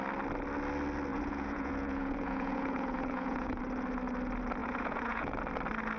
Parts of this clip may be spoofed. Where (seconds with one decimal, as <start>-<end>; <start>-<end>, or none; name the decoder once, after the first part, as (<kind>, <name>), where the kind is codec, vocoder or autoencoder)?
1.1-3.6 (vocoder, Vocos); 4.6-5.4